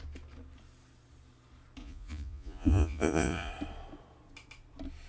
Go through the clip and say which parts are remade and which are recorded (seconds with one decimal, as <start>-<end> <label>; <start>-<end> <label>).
0.0-1.8 recorded; 1.8-3.5 remade; 3.5-5.1 recorded